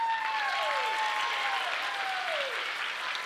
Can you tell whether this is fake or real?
real